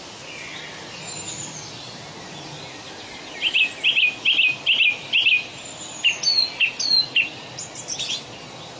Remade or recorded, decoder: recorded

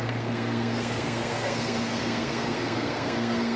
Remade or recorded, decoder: remade, codec, SNAC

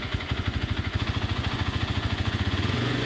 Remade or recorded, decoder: remade, vocoder, Vocos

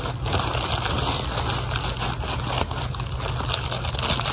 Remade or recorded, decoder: recorded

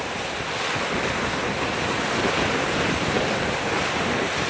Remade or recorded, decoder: recorded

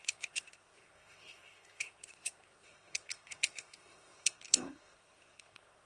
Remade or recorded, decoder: remade, codec, SNAC